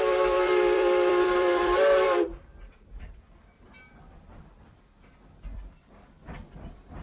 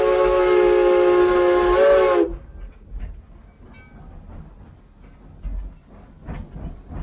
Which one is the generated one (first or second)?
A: first